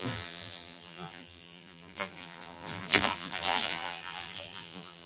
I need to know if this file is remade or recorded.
remade